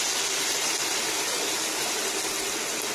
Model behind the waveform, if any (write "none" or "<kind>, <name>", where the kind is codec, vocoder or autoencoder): none